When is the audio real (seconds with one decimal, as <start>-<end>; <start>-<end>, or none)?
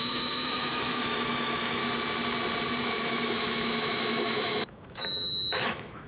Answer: 1.8-2.8